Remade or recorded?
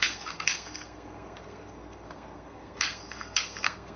remade